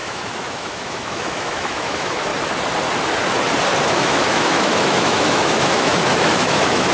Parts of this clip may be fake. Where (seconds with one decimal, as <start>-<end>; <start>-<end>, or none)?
0.0-2.3; 3.9-6.9